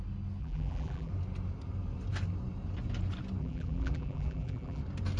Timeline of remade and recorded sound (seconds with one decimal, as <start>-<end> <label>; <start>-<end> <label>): 0.0-0.4 recorded; 0.4-1.1 remade; 1.1-3.4 recorded; 3.4-4.8 remade; 4.8-5.2 recorded